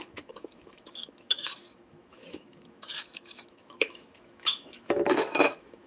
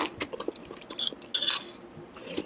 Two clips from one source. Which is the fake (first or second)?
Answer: first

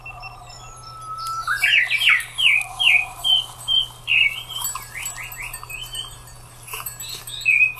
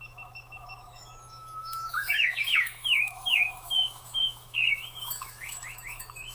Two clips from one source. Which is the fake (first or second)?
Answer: second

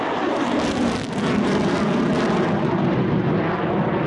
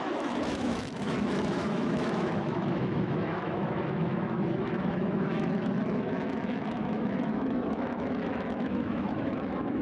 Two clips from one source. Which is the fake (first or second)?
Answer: second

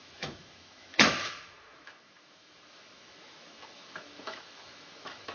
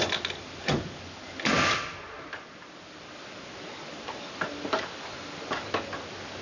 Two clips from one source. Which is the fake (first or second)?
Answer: first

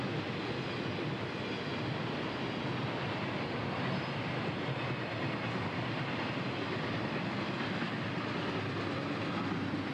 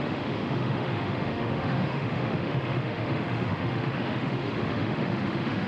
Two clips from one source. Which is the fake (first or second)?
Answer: second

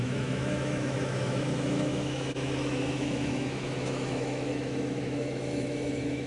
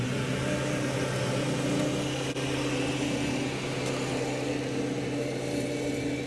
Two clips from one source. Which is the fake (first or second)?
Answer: first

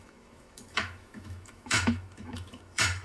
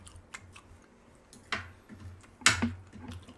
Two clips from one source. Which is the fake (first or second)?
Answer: first